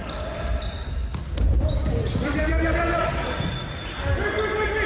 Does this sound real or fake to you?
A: real